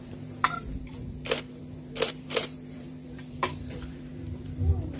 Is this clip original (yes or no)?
no